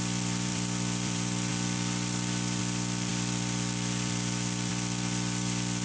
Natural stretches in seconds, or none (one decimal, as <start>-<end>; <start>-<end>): none